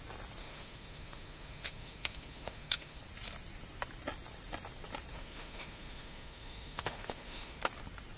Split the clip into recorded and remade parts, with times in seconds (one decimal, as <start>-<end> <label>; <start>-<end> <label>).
0.0-0.4 recorded; 0.4-3.0 remade; 3.0-5.1 recorded; 5.1-7.6 remade; 7.6-8.2 recorded